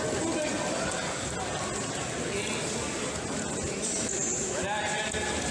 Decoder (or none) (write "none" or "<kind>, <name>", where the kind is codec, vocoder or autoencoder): none